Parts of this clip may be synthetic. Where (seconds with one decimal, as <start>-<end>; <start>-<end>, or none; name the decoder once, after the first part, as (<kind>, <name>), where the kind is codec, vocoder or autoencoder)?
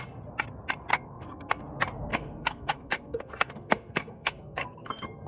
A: 0.9-1.6 (codec, SNAC); 2.1-5.3